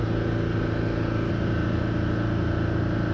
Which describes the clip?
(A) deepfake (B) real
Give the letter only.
B